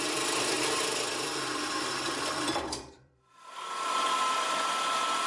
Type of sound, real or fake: fake